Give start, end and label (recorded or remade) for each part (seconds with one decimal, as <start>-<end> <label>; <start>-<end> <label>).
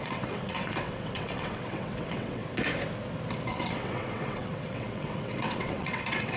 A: 0.0-2.4 remade; 2.4-3.5 recorded; 3.5-6.4 remade